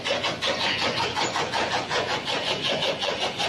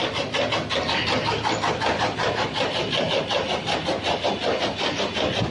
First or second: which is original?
second